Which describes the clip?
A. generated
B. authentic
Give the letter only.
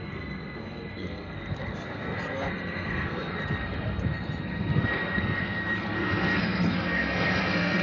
A